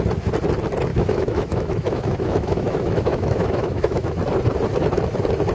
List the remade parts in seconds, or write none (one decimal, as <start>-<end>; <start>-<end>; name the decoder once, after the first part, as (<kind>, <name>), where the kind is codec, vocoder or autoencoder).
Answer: 0.9-4.2 (autoencoder, DAC-VAE)